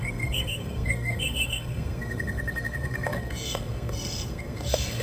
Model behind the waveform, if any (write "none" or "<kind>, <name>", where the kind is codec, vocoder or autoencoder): codec, SNAC